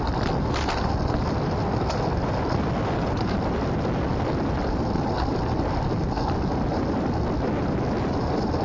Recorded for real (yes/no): yes